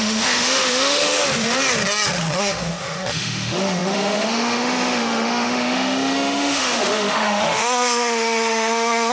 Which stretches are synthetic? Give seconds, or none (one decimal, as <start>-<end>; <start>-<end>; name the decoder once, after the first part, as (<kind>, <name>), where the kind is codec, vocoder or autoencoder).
0.0-1.2 (autoencoder, DAC-VAE); 2.4-9.1